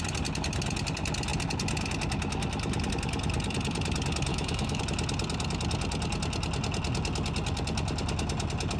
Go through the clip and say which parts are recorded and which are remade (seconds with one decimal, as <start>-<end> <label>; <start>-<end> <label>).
0.0-4.3 recorded; 4.3-4.8 remade; 4.8-8.8 recorded